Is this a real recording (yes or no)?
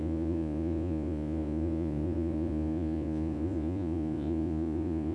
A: no